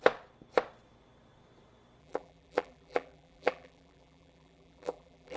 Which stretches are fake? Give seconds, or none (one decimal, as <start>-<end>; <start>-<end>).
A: 2.0-5.4